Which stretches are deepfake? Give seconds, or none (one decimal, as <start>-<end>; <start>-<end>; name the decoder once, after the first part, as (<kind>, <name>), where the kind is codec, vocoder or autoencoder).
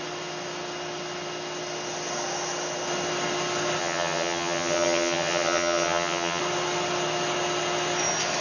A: 3.8-6.4 (vocoder, HiFi-GAN)